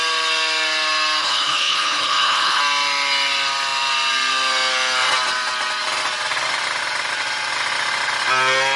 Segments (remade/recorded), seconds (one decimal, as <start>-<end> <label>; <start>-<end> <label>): 0.0-1.2 recorded; 1.2-2.6 remade; 2.6-8.8 recorded

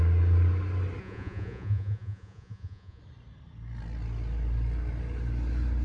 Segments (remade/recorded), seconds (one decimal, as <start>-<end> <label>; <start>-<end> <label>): 0.0-1.0 recorded; 1.0-3.0 remade; 3.0-5.8 recorded